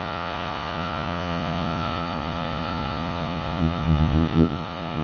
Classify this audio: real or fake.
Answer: fake